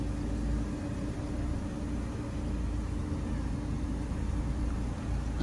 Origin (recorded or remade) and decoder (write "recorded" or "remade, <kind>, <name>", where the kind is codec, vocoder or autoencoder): recorded